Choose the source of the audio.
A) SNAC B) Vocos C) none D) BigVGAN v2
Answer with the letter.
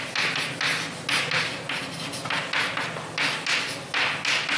C